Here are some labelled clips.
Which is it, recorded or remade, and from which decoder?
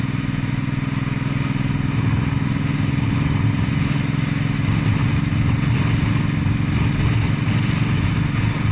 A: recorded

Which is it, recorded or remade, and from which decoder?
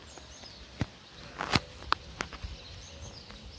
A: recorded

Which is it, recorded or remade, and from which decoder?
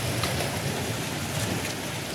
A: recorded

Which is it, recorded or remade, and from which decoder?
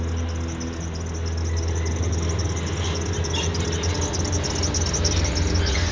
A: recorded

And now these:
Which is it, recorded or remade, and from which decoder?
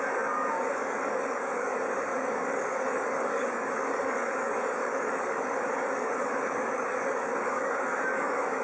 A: remade, codec, DAC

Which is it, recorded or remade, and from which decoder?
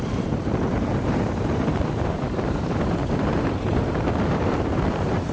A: remade, vocoder, BigVGAN v2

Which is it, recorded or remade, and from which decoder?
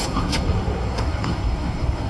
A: remade, codec, SNAC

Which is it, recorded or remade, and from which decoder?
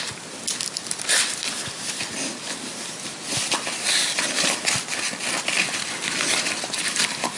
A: recorded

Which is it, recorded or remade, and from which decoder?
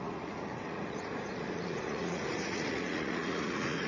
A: remade, vocoder, Vocos